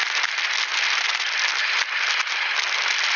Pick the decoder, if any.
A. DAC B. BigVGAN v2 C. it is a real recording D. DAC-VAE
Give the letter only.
C